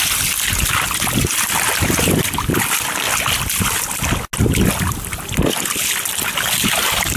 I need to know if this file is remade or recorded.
recorded